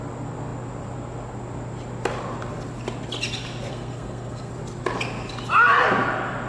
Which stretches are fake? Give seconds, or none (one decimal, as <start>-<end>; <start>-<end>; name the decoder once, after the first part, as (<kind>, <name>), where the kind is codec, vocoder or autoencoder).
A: 3.7-4.5 (codec, SNAC)